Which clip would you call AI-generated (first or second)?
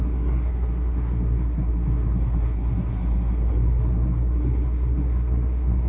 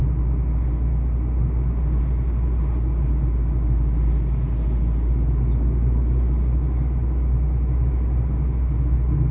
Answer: first